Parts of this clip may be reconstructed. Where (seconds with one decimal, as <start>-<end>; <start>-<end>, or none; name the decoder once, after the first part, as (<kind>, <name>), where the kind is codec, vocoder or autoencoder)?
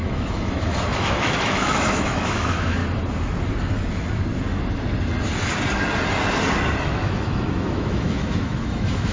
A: 0.0-2.8 (autoencoder, DAC-VAE); 6.8-9.1